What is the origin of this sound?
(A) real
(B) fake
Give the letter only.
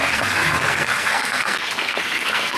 B